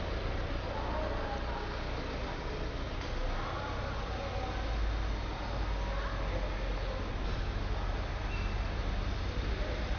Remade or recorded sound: recorded